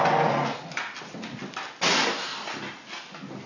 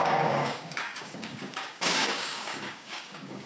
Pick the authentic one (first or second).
first